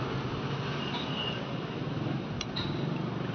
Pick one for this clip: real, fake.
real